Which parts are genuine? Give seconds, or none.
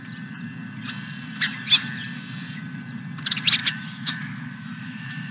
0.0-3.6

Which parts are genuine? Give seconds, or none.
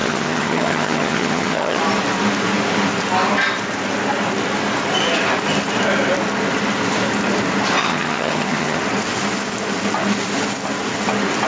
1.8-7.8; 8.8-11.5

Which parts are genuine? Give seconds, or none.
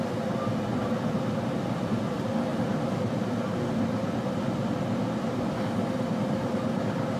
0.0-7.2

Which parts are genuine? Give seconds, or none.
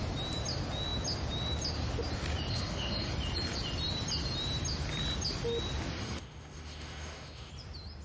0.0-2.5; 3.1-5.9; 7.5-8.0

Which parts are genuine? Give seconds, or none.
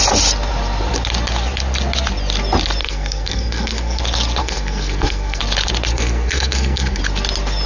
0.0-2.8; 4.0-4.4; 5.4-5.9; 7.0-7.7